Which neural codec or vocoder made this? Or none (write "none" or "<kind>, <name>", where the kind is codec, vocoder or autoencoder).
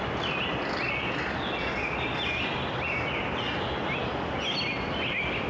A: none